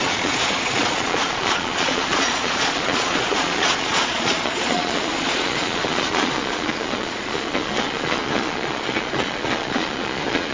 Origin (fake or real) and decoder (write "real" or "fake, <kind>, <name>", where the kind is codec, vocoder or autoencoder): fake, vocoder, Vocos